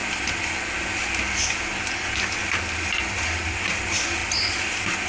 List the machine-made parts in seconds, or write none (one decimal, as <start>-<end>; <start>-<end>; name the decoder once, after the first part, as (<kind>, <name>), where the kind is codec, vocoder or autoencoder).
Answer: none

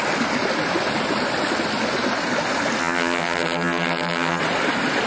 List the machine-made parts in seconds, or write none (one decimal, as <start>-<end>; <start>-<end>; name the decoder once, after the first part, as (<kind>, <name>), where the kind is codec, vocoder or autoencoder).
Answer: 2.8-4.4 (vocoder, HiFi-GAN)

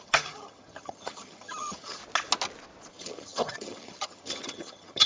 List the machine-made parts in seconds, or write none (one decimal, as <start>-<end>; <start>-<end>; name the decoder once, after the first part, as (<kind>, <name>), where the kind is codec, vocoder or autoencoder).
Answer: 0.0-2.0 (vocoder, HiFi-GAN); 2.9-5.1

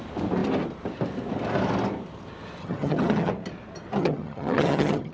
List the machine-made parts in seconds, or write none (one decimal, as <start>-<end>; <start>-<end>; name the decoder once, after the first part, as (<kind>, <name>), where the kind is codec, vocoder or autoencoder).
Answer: 2.6-3.3 (vocoder, HiFi-GAN); 4.0-5.1

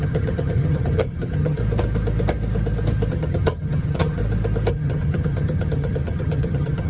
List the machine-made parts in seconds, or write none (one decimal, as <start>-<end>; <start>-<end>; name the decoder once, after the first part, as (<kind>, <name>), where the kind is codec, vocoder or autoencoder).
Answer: 0.0-1.6 (vocoder, HiFi-GAN); 3.1-4.2; 4.7-6.9

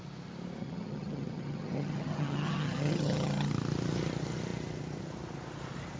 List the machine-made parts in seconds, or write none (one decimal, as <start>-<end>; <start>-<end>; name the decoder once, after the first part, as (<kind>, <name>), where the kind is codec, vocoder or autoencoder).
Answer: 0.6-3.5 (vocoder, HiFi-GAN)

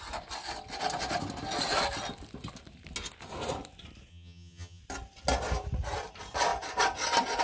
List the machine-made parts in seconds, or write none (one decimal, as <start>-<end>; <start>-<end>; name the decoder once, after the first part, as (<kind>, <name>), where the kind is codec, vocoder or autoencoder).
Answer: 4.1-4.8 (vocoder, HiFi-GAN)

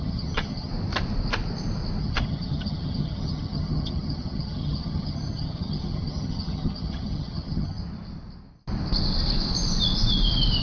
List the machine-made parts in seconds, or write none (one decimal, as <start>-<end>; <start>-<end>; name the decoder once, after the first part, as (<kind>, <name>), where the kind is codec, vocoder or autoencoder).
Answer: 0.0-0.7 (vocoder, HiFi-GAN); 2.0-7.8